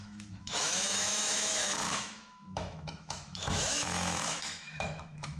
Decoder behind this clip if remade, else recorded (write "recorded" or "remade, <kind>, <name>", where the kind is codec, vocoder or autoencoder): remade, autoencoder, DAC-VAE